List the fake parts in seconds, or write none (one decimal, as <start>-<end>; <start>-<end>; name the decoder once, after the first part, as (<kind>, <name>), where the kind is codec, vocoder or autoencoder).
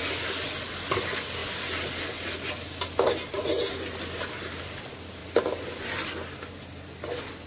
none